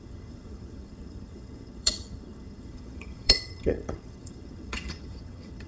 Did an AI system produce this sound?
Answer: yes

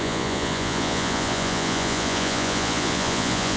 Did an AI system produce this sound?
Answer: yes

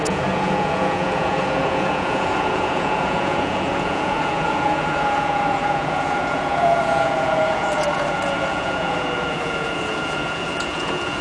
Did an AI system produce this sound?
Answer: yes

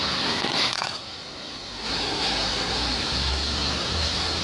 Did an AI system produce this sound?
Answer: yes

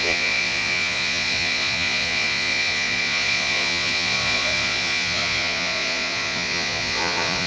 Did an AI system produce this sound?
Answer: yes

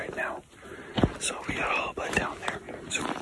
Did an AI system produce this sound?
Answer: no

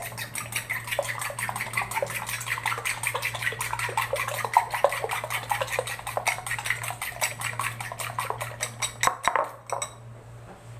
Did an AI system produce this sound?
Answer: no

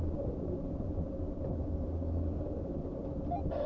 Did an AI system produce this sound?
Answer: no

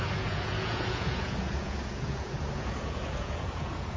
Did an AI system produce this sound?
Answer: yes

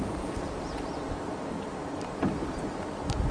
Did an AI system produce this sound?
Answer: no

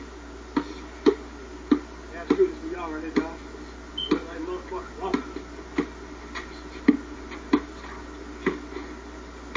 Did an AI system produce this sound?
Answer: no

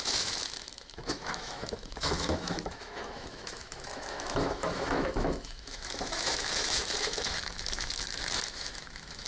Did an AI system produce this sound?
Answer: yes